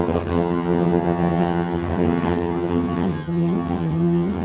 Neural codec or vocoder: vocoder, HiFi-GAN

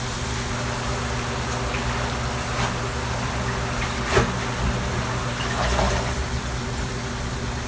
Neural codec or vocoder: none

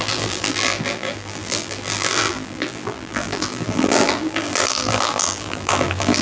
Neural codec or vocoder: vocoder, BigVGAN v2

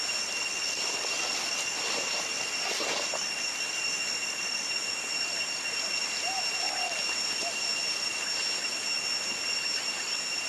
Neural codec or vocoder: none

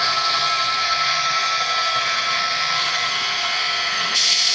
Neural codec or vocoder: codec, SNAC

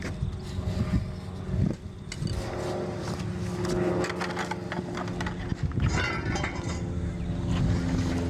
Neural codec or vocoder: none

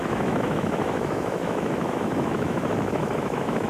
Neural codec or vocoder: autoencoder, DAC-VAE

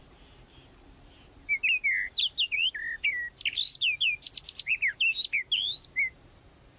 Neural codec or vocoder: none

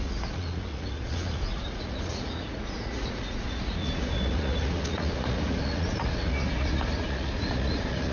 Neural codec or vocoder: vocoder, Vocos